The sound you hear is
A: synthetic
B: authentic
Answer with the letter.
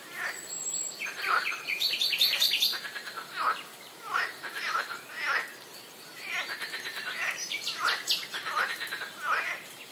A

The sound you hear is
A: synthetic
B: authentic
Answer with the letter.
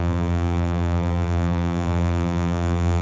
A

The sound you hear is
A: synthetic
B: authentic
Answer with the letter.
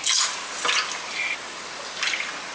B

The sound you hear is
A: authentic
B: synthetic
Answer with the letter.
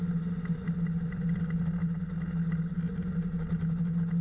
A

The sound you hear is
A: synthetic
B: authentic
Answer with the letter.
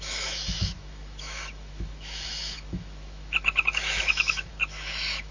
A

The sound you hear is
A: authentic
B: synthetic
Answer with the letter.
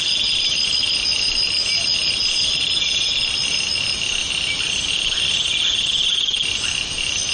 A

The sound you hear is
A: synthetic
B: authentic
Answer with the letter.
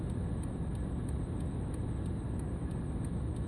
B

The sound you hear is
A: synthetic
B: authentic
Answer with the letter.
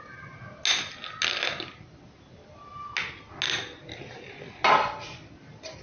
B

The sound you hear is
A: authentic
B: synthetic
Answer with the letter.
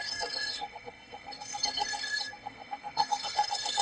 B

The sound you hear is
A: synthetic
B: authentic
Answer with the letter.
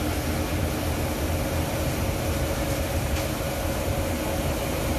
B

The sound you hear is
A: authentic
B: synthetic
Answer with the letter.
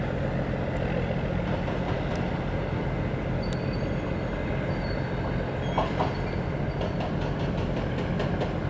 A